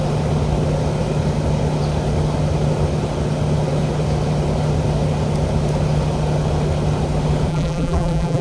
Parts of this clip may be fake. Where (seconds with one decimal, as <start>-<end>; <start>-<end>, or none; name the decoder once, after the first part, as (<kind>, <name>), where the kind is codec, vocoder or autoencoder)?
7.5-8.4 (vocoder, BigVGAN v2)